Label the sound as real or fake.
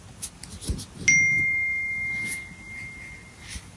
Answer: real